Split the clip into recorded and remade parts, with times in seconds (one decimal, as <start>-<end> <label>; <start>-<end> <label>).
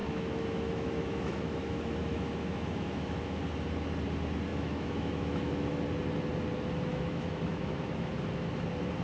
0.0-3.4 remade; 3.4-4.5 recorded; 4.5-5.8 remade; 5.8-6.9 recorded; 6.9-8.1 remade; 8.1-9.0 recorded